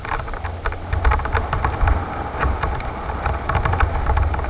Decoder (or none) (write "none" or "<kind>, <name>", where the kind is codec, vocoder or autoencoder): none